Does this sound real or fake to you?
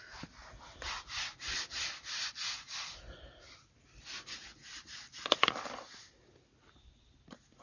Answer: real